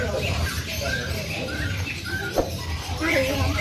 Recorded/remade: recorded